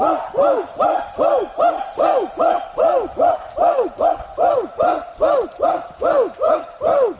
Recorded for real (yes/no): yes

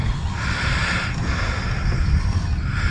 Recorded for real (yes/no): yes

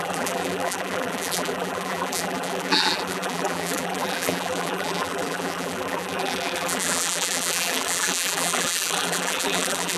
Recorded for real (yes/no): no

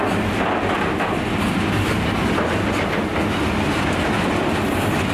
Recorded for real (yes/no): yes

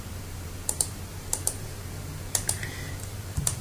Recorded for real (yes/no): no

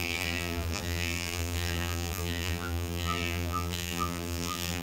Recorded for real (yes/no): no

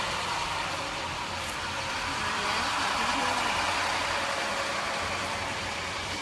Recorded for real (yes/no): no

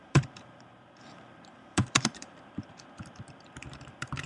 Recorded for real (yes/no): no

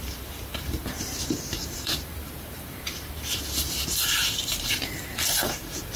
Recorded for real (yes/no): no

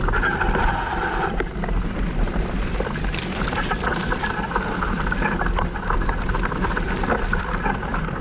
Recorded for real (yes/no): no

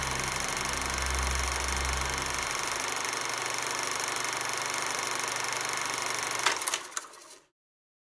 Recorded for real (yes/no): yes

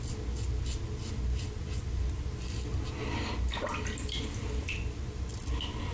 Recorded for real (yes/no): yes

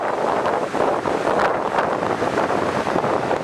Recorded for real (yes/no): no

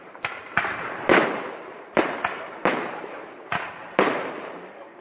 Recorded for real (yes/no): no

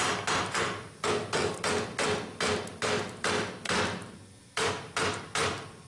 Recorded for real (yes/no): yes